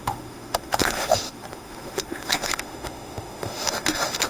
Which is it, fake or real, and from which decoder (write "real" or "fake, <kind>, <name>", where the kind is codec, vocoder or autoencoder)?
fake, autoencoder, DAC-VAE